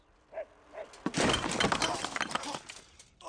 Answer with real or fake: real